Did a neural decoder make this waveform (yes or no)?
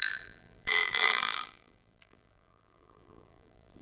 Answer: yes